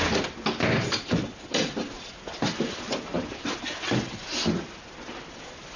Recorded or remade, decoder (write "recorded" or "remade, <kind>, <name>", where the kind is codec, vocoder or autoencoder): recorded